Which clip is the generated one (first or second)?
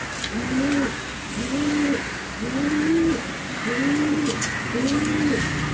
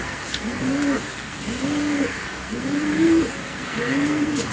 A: second